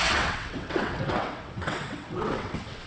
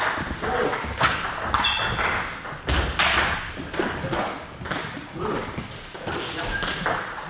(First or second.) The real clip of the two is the second